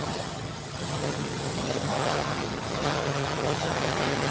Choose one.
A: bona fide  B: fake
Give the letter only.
B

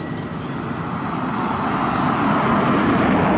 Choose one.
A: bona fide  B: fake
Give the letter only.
A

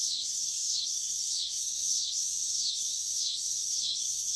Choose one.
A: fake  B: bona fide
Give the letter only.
A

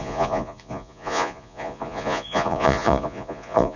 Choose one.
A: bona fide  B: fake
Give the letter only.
B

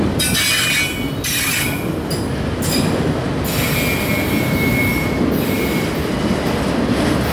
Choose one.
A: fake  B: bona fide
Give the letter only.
B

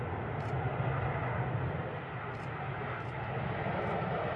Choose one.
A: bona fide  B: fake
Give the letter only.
A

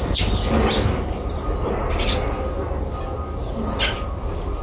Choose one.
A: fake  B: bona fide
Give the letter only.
B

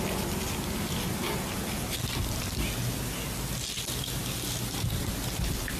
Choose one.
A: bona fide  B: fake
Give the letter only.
A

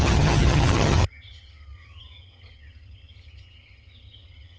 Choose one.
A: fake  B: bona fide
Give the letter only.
A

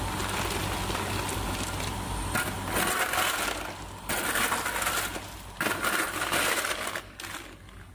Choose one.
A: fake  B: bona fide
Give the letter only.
B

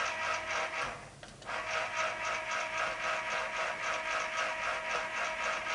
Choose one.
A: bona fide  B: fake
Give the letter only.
A